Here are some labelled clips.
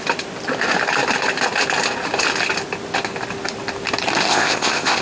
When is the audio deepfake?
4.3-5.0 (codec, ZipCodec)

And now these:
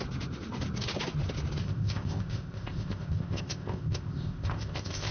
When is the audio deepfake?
1.6-5.1 (codec, ZipCodec)

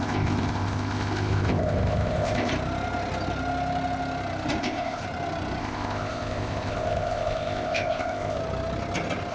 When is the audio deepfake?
0.0-2.5 (codec, ZipCodec); 4.6-5.0; 5.6-8.4

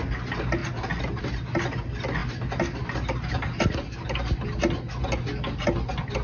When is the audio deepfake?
none

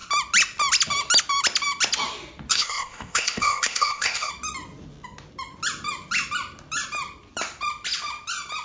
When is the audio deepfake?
2.5-4.3 (codec, ZipCodec)

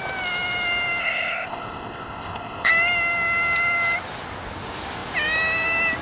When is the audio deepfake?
1.0-2.7 (codec, ZipCodec)